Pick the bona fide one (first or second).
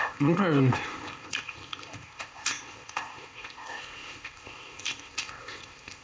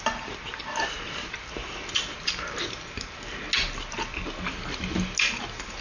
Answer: second